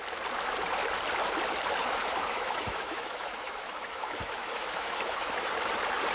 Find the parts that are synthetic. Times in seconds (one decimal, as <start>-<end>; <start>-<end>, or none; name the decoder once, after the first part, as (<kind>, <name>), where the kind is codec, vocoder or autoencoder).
1.8-5.5 (autoencoder, DAC-VAE)